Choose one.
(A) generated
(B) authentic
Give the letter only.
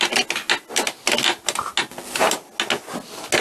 B